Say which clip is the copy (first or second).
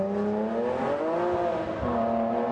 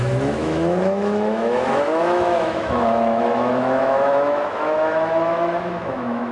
second